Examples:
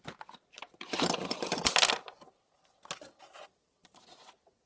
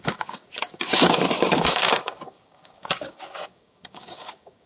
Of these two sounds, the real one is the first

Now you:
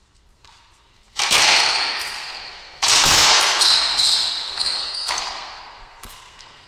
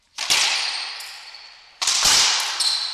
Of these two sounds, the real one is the second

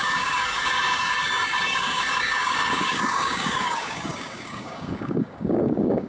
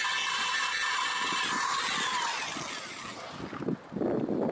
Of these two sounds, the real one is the second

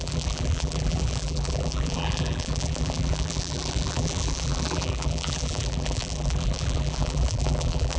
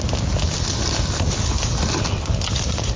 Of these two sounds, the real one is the second